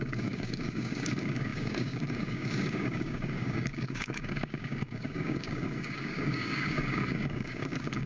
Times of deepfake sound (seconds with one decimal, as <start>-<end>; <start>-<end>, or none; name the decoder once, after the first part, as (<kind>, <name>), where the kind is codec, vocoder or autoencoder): 0.0-8.1 (codec, DAC)